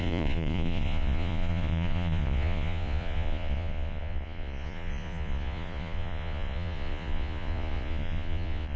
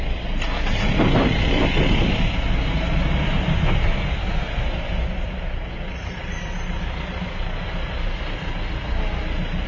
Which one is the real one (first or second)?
second